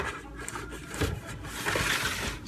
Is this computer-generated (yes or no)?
no